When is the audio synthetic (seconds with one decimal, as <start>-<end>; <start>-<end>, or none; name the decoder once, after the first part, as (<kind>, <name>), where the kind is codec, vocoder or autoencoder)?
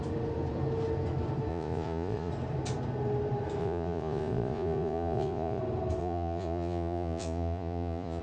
1.5-2.3 (vocoder, Vocos); 3.6-5.6; 6.0-8.2